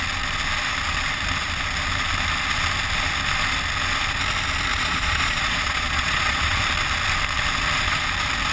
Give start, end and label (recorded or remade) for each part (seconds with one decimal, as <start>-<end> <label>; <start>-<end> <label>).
0.0-4.7 recorded; 4.7-6.6 remade; 6.6-8.5 recorded